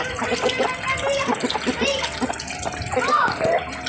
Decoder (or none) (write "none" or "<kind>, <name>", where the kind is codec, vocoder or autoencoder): none